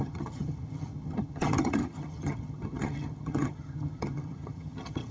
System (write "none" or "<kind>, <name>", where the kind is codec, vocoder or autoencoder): vocoder, HiFi-GAN